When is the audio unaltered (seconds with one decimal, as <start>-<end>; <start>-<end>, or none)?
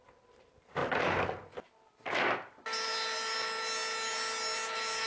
0.0-5.1